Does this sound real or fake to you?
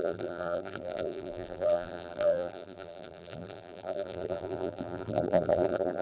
fake